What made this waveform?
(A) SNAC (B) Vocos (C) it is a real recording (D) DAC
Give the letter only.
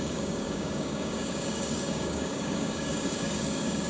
D